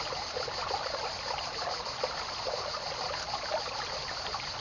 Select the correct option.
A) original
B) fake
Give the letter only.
A